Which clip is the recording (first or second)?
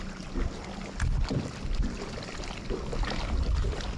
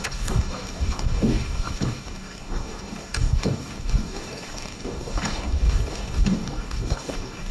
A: first